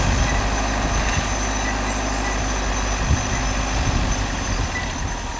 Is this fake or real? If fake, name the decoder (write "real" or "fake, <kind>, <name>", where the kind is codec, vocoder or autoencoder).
real